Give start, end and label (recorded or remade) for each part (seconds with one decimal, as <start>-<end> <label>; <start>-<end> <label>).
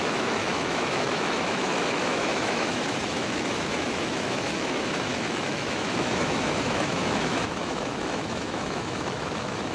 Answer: 0.0-9.7 remade